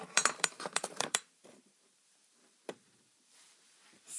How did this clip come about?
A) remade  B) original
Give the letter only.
A